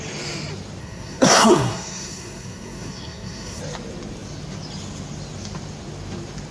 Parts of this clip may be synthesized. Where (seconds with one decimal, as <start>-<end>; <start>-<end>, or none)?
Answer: 0.8-3.6